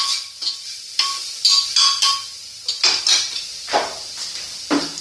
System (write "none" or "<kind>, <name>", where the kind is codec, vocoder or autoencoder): none